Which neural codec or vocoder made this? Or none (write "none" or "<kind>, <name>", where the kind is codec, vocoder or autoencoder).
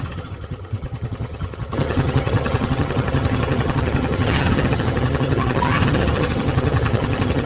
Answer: vocoder, HiFi-GAN